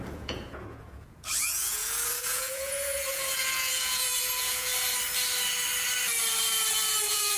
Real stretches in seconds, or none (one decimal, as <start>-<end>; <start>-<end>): 4.7-7.0